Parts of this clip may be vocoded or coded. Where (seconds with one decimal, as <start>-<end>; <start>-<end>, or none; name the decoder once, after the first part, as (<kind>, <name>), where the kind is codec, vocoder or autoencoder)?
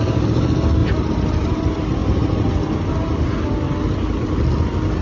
0.8-1.5 (vocoder, BigVGAN v2); 2.0-2.5